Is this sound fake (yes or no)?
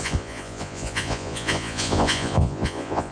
yes